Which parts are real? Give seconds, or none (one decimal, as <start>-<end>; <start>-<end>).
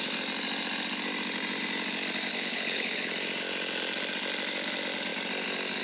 0.0-2.3; 3.1-5.8